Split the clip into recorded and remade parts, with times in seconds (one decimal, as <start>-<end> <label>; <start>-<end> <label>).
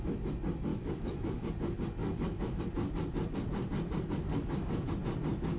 0.0-0.7 recorded; 0.7-1.5 remade; 1.5-2.0 recorded; 2.0-2.6 remade; 2.6-4.3 recorded; 4.3-4.9 remade; 4.9-5.6 recorded